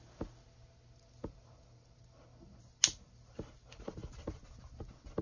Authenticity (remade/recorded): recorded